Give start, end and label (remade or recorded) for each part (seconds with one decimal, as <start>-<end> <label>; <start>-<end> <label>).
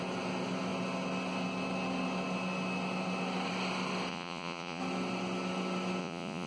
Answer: 0.0-4.1 recorded; 4.1-4.8 remade; 4.8-6.0 recorded; 6.0-6.5 remade